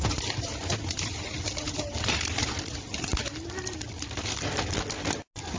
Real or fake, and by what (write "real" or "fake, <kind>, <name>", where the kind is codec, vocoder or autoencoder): real